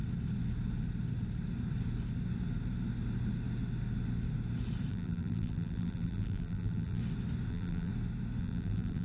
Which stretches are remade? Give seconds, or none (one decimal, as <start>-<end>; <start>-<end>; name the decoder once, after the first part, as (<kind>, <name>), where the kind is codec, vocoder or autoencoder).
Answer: 4.9-7.0 (vocoder, BigVGAN v2); 7.5-7.9; 8.4-9.0